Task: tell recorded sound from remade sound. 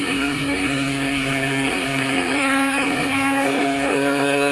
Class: remade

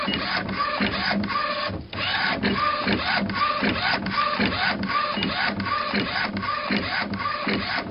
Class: recorded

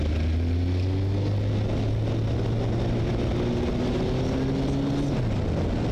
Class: recorded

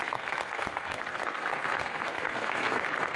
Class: remade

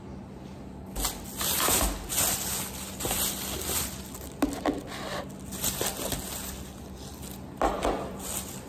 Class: recorded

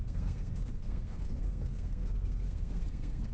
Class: remade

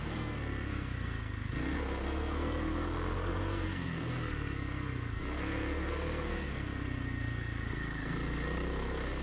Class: remade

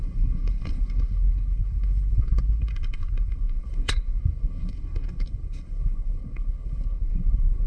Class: remade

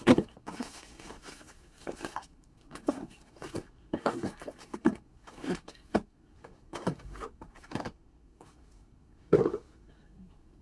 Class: remade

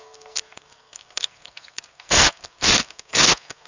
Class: remade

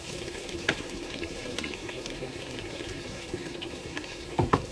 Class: remade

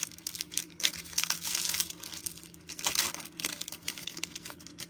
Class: remade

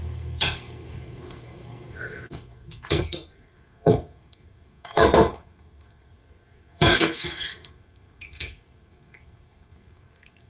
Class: remade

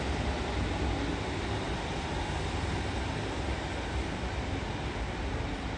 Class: recorded